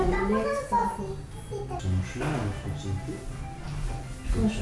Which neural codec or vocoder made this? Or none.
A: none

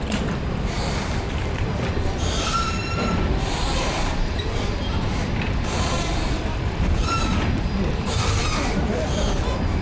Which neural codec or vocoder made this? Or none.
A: vocoder, BigVGAN v2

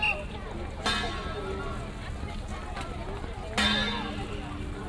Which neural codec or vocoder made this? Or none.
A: none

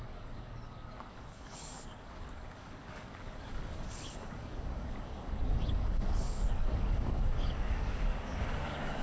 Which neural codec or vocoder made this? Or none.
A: codec, DAC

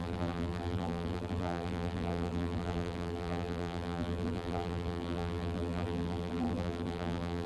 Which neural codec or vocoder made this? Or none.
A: vocoder, BigVGAN v2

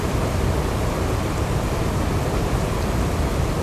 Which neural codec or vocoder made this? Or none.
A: vocoder, BigVGAN v2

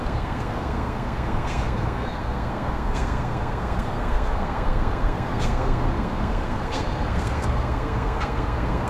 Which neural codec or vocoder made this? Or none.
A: codec, SNAC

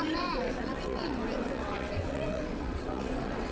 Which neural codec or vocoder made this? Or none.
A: vocoder, WaveNeXt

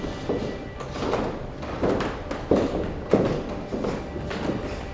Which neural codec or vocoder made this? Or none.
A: none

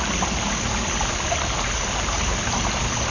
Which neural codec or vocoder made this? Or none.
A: none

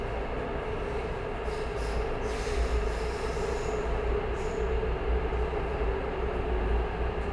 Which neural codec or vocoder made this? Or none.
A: none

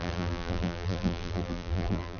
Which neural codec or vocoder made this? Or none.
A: vocoder, BigVGAN v2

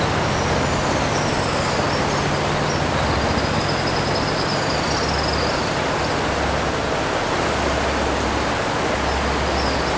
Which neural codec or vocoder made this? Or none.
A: none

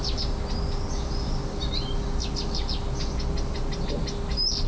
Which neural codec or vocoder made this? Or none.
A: none